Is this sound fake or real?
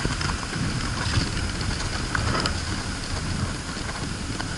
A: real